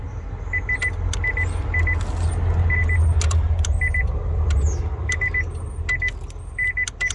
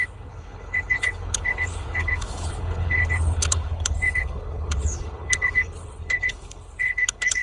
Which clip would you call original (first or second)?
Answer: first